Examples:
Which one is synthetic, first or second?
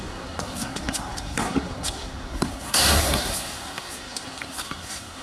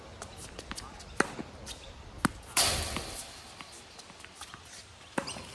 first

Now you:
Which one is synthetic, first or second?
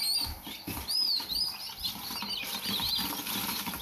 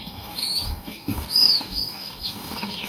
second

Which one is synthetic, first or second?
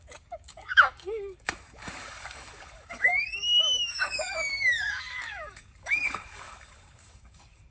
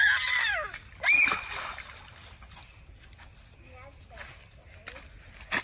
first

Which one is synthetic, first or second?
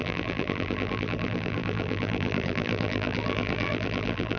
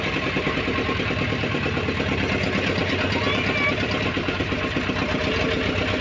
first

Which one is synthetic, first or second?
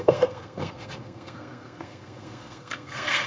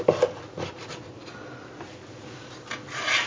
first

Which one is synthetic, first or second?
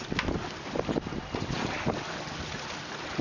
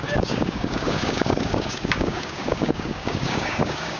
second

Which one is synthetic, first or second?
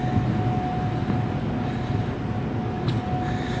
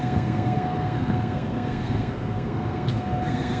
second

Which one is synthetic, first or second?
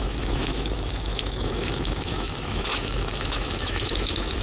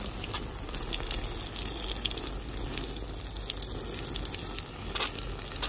first